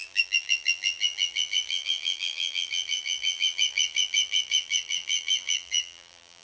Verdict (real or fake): fake